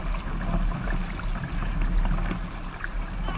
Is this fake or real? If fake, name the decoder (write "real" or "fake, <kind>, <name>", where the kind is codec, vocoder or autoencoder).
real